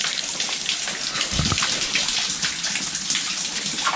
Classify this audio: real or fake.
real